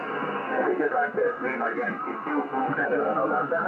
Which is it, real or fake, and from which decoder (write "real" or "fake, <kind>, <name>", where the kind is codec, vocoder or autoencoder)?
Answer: fake, codec, SNAC